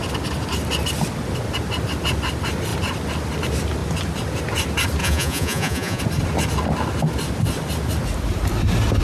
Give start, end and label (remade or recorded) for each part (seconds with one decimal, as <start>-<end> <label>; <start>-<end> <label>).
0.0-5.0 recorded; 5.0-6.0 remade; 6.0-9.0 recorded